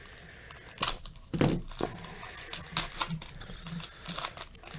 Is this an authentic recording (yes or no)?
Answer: yes